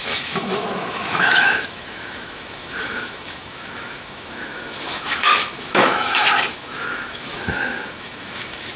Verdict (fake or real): fake